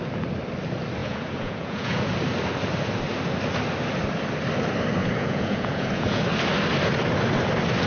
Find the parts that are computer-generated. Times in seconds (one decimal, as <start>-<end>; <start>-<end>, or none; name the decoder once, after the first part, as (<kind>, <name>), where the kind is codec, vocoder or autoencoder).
1.0-2.1 (vocoder, Vocos); 5.0-6.2